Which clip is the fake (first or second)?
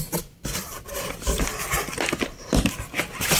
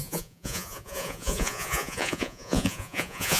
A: second